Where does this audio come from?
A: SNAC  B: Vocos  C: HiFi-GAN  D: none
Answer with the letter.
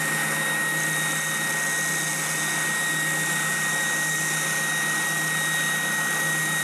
D